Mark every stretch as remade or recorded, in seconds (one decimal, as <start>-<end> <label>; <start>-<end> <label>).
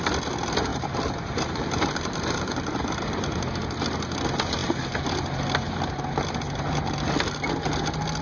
0.0-0.7 recorded; 0.7-3.3 remade; 3.3-8.2 recorded